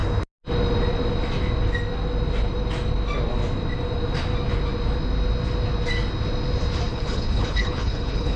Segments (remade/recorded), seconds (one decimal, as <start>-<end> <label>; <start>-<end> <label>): 0.0-6.9 recorded; 6.9-8.4 remade